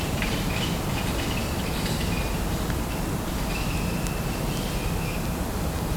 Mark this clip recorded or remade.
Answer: recorded